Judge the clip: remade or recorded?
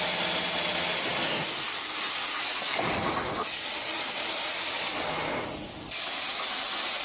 recorded